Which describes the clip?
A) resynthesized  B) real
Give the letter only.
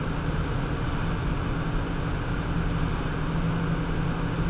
B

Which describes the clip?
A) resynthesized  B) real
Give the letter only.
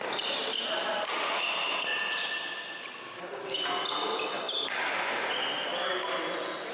B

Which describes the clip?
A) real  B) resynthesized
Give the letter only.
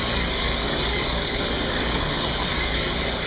B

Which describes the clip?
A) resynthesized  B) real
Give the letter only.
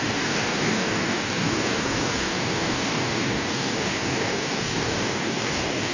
A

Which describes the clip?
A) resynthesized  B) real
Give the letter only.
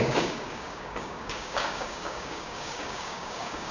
A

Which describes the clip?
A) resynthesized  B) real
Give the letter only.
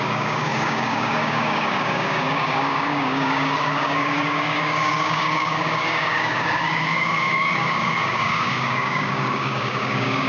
A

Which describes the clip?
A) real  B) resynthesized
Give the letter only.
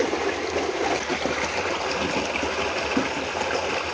A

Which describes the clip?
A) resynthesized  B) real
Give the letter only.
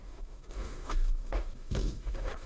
A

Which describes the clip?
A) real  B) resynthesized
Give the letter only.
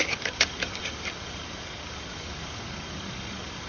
B